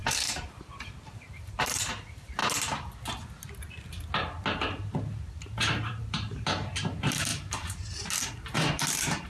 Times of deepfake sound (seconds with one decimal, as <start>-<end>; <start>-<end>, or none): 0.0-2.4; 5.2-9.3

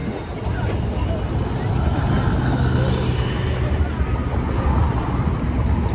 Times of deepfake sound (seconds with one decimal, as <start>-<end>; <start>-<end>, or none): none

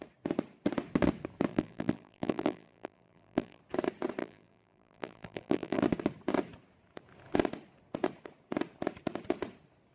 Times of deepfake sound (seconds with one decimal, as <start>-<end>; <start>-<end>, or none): 1.5-3.6; 4.2-5.8